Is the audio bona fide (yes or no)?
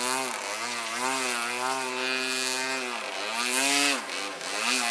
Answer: yes